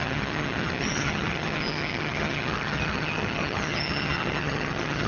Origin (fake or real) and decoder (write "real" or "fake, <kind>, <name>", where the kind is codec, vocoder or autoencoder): fake, vocoder, HiFi-GAN